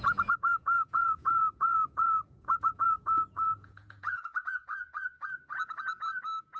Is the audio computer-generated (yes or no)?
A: yes